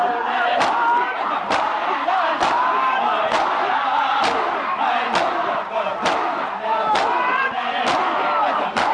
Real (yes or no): yes